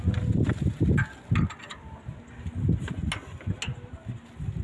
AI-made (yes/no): no